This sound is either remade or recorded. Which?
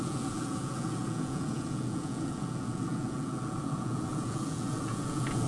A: remade